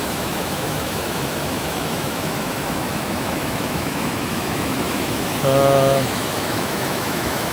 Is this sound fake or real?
fake